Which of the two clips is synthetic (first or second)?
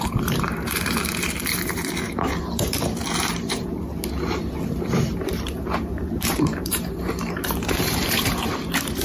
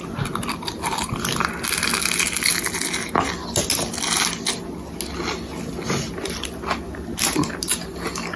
first